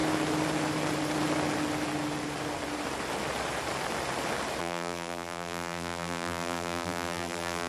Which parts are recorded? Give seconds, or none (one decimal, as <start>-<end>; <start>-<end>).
0.0-4.6